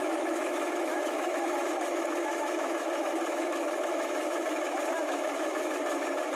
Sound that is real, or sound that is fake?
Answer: fake